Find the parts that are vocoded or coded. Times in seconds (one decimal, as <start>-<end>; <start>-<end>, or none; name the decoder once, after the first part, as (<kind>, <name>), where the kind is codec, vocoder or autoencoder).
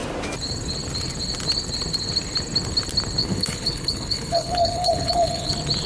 3.2-5.5 (codec, HILCodec)